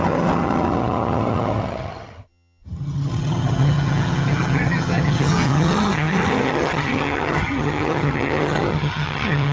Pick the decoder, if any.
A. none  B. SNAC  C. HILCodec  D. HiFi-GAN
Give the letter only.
D